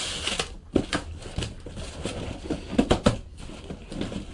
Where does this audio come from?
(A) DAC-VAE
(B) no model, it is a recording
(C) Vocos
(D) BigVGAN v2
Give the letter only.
D